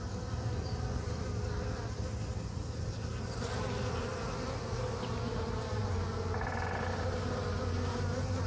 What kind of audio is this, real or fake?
real